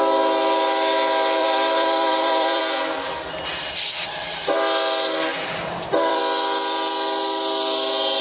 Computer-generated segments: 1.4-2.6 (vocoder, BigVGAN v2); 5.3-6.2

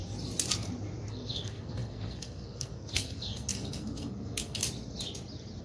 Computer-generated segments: 1.1-4.6 (codec, SNAC)

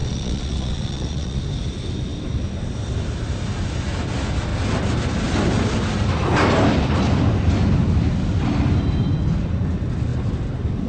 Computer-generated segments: 0.0-1.4 (vocoder, Vocos)

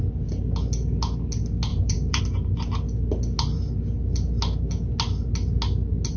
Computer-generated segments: 1.7-2.2 (vocoder, BigVGAN v2)

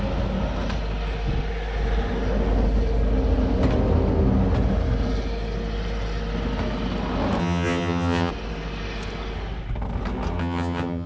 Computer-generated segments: 7.4-8.3 (vocoder, HiFi-GAN); 10.4-11.1

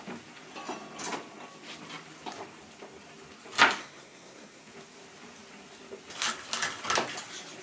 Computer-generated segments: 3.8-4.6 (codec, SNAC)

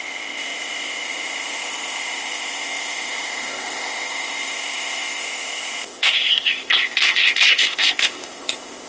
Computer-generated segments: 0.0-8.9 (codec, ZipCodec)